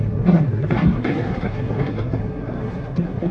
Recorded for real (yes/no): no